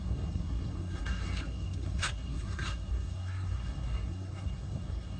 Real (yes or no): no